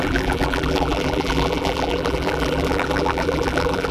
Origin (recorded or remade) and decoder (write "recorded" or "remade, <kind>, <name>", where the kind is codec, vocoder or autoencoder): remade, vocoder, BigVGAN v2